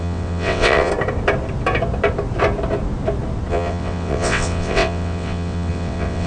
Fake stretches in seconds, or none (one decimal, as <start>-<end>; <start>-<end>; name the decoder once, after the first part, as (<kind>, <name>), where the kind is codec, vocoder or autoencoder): 0.0-0.9 (vocoder, WaveNeXt); 3.5-6.3